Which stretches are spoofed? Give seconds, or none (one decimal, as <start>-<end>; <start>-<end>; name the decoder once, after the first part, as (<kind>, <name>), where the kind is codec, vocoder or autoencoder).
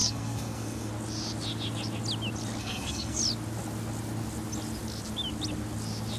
0.0-0.9 (codec, SNAC); 2.6-3.2